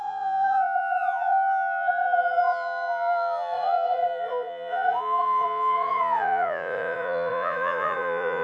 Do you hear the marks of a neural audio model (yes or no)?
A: yes